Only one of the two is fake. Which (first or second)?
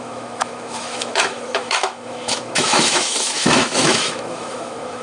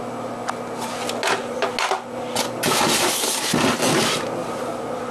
first